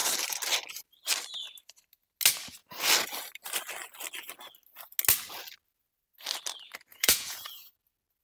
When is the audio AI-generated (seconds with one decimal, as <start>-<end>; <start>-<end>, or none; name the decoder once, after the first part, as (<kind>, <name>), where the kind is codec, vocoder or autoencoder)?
6.9-7.7 (vocoder, Vocos)